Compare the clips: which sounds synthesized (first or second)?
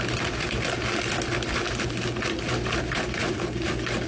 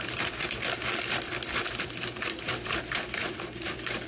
second